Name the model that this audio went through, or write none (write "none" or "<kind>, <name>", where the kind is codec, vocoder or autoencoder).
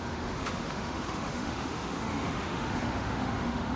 autoencoder, DAC-VAE